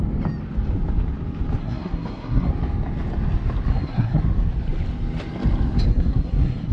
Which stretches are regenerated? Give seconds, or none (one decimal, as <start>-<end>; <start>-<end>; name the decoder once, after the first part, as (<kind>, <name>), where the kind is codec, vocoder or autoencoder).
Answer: 1.6-2.5 (codec, SNAC); 3.7-4.2; 5.9-6.7